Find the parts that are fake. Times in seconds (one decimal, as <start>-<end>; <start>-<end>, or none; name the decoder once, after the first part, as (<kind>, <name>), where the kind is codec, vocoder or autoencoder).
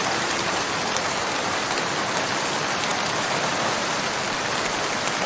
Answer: 0.0-5.3 (vocoder, BigVGAN v2)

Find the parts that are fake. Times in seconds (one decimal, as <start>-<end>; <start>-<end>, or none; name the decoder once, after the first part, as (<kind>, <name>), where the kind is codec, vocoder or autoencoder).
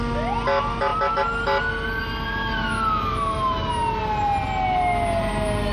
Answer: none